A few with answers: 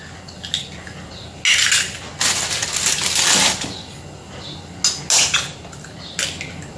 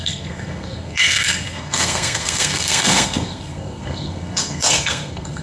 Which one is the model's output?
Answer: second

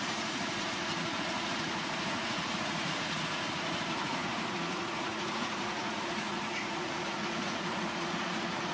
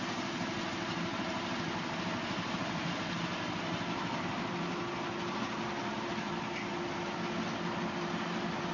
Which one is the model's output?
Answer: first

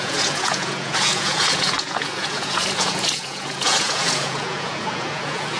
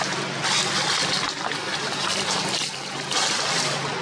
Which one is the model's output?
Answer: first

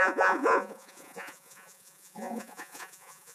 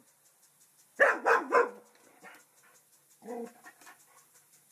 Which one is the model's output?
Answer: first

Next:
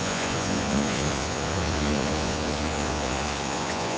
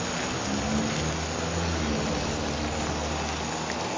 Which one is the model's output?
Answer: first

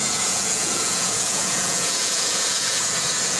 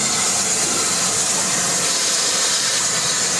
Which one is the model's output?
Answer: first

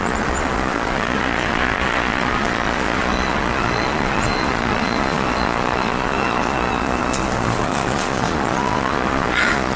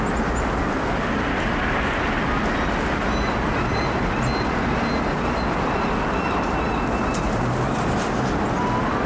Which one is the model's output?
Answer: first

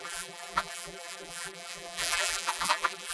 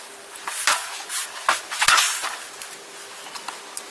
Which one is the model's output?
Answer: first